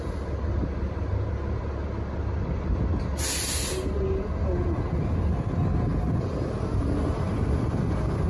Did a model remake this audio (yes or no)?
no